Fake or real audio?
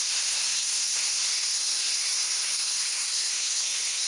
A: fake